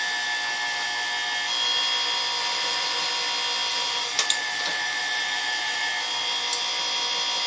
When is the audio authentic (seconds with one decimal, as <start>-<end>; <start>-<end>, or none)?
0.0-2.4; 3.1-3.7; 5.9-7.5